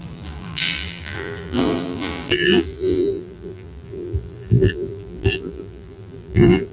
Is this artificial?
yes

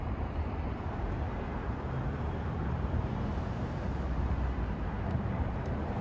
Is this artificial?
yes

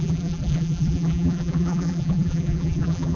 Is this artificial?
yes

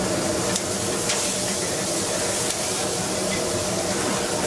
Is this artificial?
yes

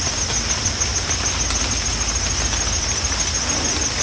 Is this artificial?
no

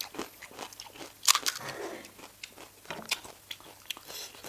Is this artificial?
no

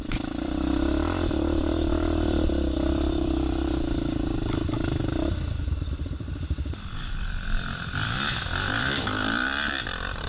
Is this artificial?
yes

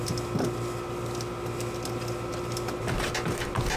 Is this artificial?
no